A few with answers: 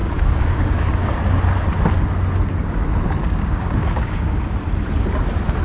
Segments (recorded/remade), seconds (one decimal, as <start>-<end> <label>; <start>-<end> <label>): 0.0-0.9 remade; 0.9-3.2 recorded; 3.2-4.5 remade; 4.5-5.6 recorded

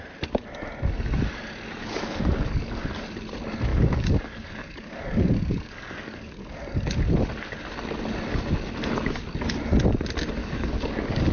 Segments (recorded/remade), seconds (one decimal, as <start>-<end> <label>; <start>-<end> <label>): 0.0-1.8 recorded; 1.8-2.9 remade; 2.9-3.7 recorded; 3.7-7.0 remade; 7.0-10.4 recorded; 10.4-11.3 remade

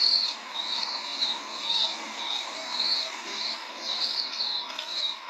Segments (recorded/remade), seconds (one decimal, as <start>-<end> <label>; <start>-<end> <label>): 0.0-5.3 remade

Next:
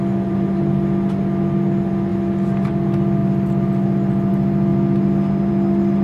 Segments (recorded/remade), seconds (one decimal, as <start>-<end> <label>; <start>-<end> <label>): 0.0-6.0 recorded